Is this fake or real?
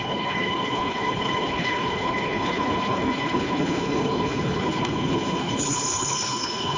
fake